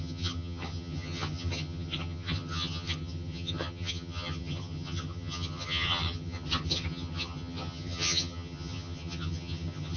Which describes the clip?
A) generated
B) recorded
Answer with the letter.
A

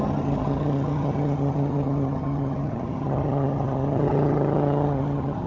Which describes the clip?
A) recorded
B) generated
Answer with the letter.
B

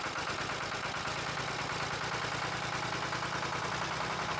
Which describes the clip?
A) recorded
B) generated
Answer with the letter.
A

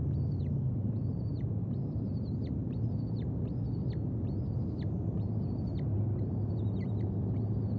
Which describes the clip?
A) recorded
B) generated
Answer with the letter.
A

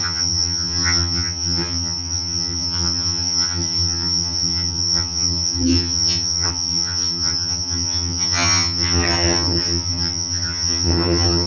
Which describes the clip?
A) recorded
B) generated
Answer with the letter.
B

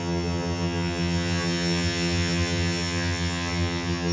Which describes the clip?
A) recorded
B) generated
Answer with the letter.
B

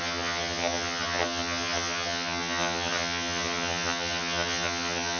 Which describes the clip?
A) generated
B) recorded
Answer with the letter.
A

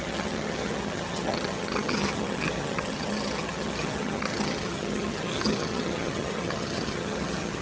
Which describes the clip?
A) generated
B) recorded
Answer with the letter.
A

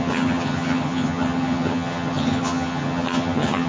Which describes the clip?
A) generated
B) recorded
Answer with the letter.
A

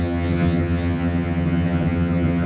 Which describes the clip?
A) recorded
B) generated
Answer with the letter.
B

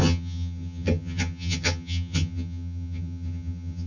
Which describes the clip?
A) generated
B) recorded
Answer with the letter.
A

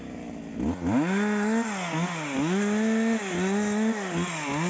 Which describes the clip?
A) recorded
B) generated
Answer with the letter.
A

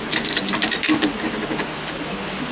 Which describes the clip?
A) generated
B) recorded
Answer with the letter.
B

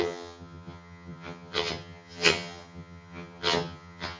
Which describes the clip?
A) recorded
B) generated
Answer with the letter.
B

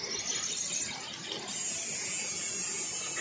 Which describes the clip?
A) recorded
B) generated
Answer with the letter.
A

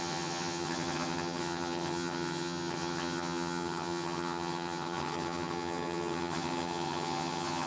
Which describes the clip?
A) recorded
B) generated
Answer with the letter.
B